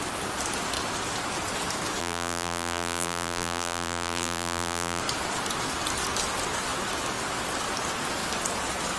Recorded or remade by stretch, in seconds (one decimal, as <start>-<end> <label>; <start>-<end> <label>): 0.0-2.0 recorded; 2.0-5.0 remade; 5.0-9.0 recorded